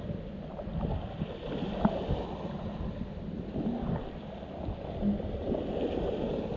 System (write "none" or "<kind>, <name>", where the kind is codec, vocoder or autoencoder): none